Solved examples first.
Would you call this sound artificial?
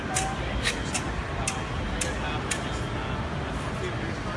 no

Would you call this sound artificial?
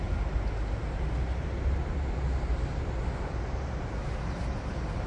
no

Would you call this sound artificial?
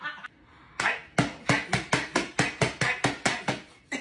no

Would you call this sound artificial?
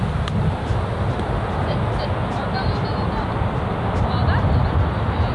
no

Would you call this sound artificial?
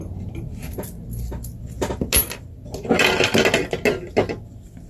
no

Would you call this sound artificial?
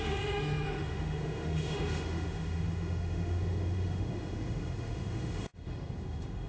yes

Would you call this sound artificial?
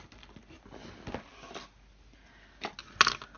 no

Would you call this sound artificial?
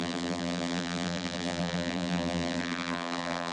yes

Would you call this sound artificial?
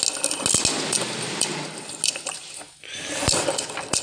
no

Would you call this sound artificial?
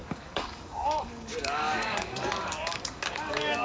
yes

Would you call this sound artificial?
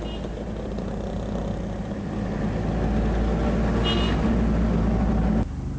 no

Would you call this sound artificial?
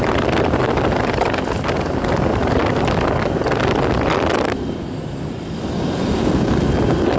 no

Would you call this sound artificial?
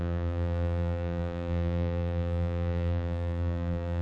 yes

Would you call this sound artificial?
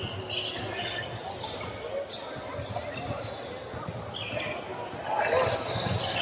no